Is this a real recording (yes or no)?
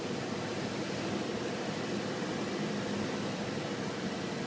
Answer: yes